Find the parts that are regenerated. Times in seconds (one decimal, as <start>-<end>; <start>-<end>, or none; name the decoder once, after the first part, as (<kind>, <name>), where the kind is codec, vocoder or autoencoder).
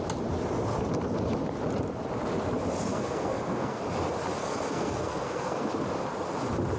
2.9-3.8 (codec, SNAC); 4.4-5.7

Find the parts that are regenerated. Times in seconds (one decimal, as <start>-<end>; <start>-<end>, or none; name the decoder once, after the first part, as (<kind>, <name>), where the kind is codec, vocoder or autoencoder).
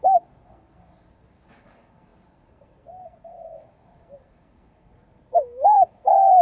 0.0-6.4 (codec, SNAC)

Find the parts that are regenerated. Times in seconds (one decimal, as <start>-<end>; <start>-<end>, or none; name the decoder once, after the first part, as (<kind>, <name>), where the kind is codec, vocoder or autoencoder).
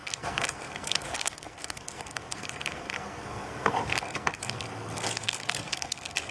0.0-6.3 (codec, SNAC)